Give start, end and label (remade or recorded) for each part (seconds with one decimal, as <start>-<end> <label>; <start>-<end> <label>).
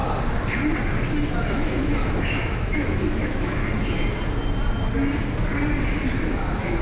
0.0-1.5 recorded; 1.5-3.6 remade; 3.6-5.8 recorded; 5.8-6.8 remade